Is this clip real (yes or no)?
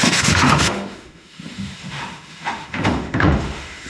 no